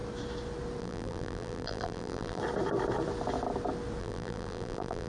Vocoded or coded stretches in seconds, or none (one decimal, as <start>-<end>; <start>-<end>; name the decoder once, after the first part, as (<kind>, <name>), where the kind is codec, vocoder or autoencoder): 0.8-2.4 (vocoder, BigVGAN v2); 4.0-5.1